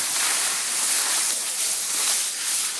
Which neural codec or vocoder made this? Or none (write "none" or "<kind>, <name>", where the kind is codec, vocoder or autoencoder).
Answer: none